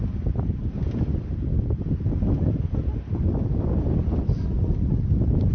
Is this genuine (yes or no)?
yes